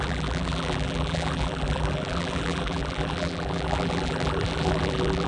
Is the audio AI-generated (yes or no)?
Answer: yes